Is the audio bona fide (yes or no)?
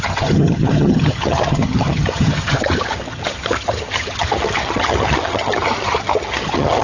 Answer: no